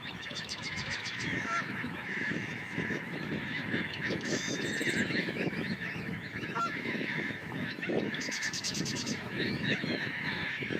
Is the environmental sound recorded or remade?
remade